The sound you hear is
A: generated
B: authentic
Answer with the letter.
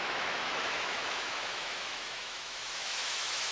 A